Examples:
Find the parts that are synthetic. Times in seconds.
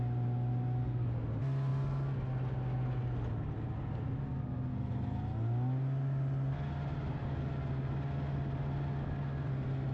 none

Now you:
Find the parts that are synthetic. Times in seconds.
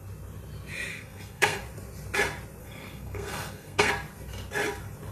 0.9-1.6 (codec, SNAC); 2.6-3.9